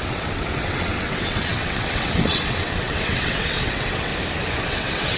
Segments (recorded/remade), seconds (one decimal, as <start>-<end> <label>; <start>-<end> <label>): 0.0-4.1 remade; 4.1-4.7 recorded; 4.7-5.2 remade